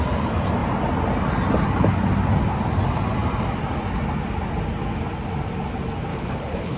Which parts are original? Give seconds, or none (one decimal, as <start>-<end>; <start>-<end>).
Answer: 0.0-6.1